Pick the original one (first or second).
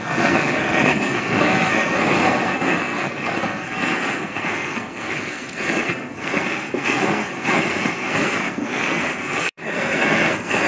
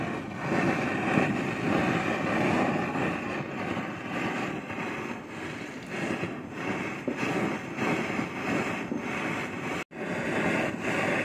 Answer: second